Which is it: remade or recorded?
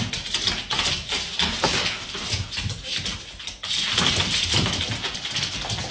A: recorded